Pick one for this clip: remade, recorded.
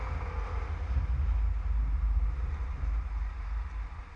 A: recorded